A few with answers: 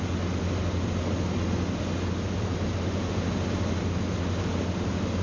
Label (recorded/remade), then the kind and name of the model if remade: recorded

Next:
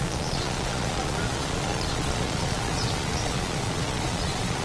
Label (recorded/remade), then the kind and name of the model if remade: remade, vocoder, Vocos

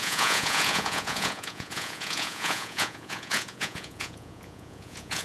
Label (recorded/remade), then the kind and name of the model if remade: remade, vocoder, Vocos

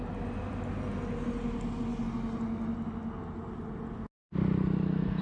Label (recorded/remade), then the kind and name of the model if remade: recorded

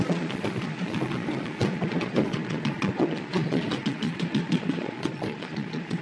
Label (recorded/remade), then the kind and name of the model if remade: remade, vocoder, Vocos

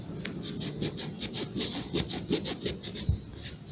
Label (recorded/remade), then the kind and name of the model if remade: recorded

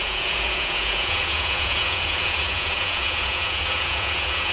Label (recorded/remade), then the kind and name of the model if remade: remade, vocoder, Vocos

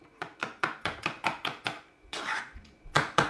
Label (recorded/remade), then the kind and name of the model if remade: remade, vocoder, Vocos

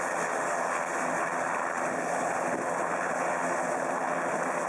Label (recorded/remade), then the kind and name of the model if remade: recorded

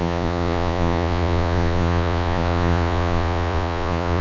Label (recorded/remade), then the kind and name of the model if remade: remade, vocoder, Vocos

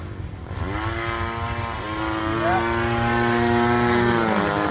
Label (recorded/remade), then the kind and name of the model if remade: recorded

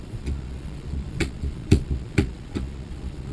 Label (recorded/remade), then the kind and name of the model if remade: remade, vocoder, Vocos